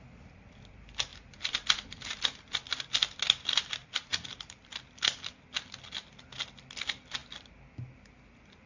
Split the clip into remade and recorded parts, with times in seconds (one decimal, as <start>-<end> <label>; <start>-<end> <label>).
0.0-4.1 recorded; 4.1-5.5 remade; 5.5-7.2 recorded; 7.2-8.7 remade